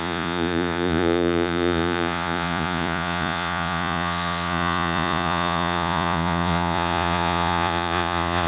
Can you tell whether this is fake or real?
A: fake